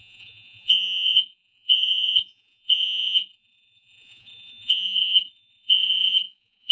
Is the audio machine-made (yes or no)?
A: yes